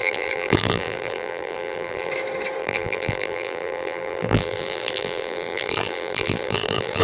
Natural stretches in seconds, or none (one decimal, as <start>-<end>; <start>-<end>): 2.1-2.6